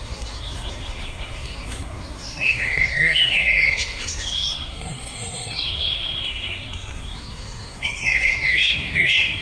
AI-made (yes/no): yes